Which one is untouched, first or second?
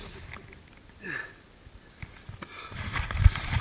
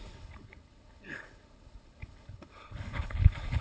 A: first